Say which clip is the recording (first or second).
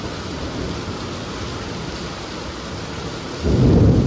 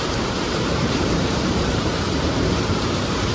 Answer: first